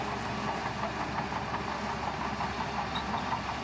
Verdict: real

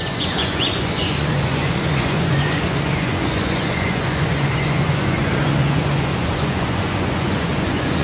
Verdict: fake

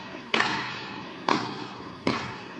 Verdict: fake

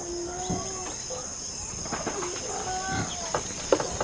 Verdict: real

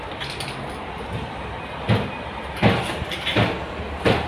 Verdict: real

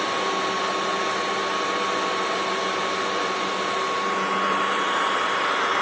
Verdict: real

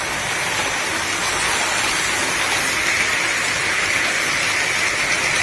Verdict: real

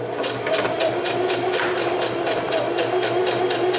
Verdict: real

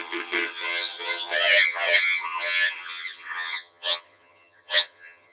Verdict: fake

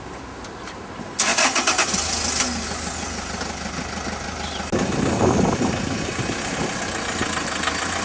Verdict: real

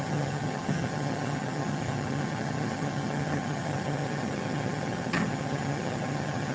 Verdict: fake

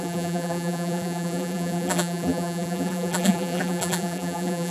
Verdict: fake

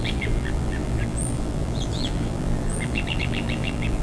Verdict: fake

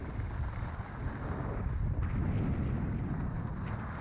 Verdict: real